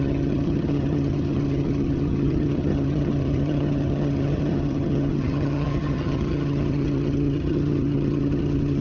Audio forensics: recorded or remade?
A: remade